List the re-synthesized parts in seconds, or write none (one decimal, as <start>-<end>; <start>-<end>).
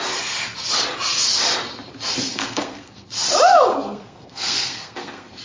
2.3-3.1; 3.7-5.4